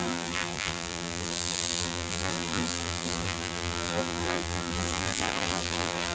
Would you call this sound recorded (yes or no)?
no